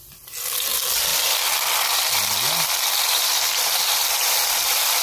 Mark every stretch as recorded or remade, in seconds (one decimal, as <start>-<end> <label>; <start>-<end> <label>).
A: 0.0-1.1 recorded; 1.1-4.1 remade; 4.1-5.0 recorded